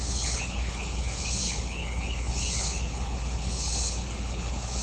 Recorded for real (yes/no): no